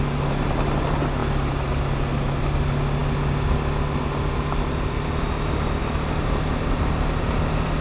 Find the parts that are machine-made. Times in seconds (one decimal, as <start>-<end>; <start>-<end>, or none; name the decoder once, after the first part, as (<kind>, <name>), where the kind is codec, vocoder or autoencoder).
none